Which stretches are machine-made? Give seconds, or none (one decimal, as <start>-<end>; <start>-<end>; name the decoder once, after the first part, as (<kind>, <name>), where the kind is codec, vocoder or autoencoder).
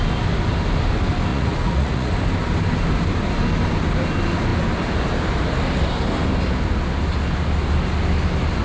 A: 1.3-2.1 (vocoder, Vocos)